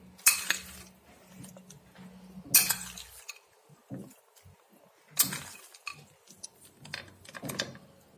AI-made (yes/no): no